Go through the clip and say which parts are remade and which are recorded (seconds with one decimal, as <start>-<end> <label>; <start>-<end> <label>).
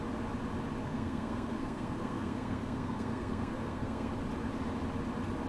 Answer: 0.0-0.8 recorded; 0.8-4.1 remade; 4.1-5.5 recorded